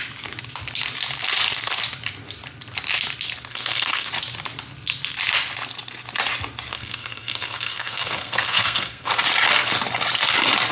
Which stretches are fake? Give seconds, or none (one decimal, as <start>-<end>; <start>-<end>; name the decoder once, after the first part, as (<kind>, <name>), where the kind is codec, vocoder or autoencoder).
3.5-4.1 (codec, SNAC); 6.7-9.1